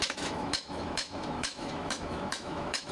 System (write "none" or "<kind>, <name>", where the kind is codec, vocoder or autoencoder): autoencoder, DAC-VAE